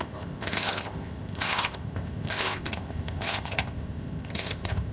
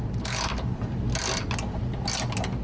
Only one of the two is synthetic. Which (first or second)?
first